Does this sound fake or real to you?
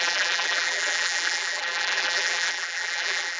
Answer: fake